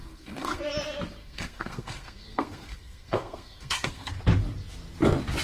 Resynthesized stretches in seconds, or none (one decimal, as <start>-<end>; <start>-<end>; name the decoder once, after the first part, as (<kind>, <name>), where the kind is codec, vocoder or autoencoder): 0.0-0.6 (codec, SNAC); 1.2-4.1